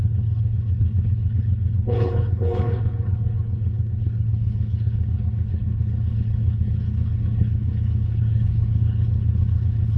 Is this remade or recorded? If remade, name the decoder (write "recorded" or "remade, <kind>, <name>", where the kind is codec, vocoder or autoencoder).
remade, codec, HILCodec